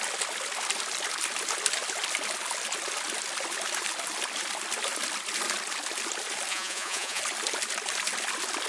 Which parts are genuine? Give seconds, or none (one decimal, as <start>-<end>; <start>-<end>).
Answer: 0.0-6.5; 7.2-8.7